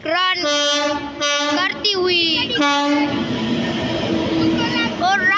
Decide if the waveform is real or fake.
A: real